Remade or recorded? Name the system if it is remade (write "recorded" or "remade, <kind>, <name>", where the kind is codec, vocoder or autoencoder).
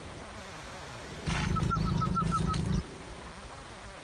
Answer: recorded